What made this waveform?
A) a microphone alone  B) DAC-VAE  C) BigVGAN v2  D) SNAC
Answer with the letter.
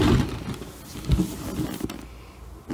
A